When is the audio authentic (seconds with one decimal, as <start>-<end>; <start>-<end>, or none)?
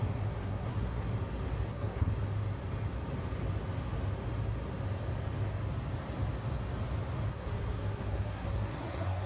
1.1-1.7; 2.1-7.3